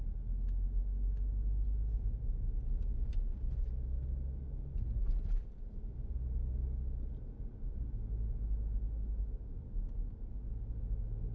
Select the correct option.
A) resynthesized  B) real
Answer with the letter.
B